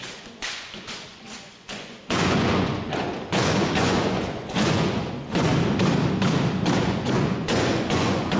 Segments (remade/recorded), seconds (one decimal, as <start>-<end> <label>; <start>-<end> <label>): 0.0-5.5 remade; 5.5-6.8 recorded; 6.8-8.4 remade